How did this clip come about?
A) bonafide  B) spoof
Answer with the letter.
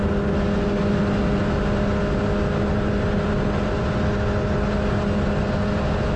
A